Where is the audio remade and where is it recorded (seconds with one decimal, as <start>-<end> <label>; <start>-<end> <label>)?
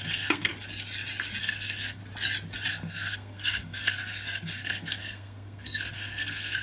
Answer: 0.0-0.5 remade; 0.5-1.4 recorded; 1.4-2.0 remade; 2.0-2.7 recorded; 2.7-6.6 remade